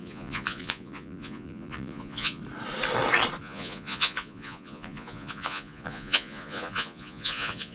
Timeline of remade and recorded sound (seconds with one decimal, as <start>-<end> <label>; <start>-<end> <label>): 0.0-2.4 remade; 2.4-3.4 recorded; 3.4-7.7 remade